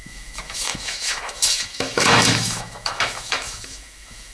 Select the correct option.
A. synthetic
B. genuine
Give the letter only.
A